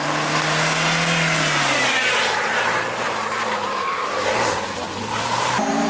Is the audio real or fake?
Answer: real